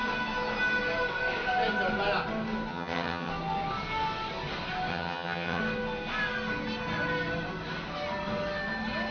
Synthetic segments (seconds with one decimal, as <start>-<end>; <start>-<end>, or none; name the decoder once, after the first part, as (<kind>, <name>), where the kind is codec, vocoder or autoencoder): 2.7-3.3 (vocoder, HiFi-GAN); 4.9-5.6